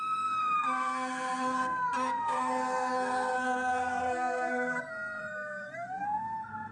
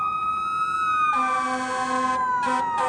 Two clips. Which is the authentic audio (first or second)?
second